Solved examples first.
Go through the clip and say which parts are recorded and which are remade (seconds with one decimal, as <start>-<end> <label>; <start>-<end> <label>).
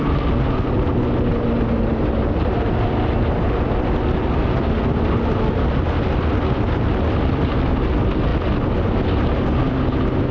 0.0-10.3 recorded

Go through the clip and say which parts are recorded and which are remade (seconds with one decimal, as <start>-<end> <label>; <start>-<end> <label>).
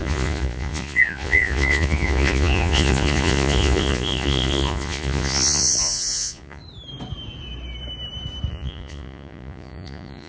0.0-6.6 remade; 6.6-8.5 recorded; 8.5-10.3 remade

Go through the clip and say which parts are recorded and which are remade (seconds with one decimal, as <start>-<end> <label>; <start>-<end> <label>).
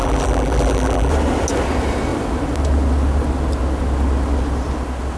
0.0-1.1 remade; 1.1-5.2 recorded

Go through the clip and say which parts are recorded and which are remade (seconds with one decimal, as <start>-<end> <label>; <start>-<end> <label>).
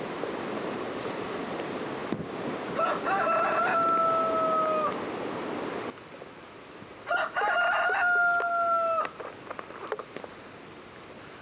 0.0-11.4 recorded